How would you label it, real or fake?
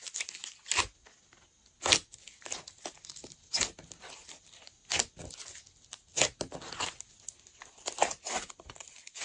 real